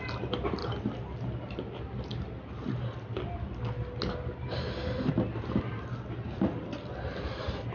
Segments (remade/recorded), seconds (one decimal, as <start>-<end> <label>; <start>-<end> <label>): 0.0-7.7 recorded